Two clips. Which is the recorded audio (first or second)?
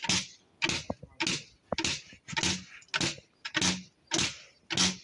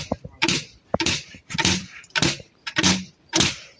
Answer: first